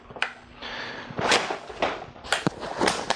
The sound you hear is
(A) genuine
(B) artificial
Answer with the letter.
A